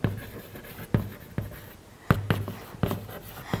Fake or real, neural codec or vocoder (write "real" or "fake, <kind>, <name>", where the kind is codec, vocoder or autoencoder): real